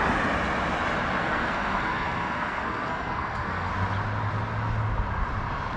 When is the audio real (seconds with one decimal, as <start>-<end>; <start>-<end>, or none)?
0.0-1.2; 3.7-5.8